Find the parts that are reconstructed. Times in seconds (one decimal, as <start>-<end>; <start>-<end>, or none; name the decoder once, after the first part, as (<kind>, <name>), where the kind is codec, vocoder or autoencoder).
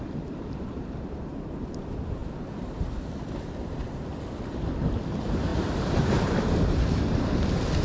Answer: 0.0-4.1 (vocoder, BigVGAN v2); 5.0-7.8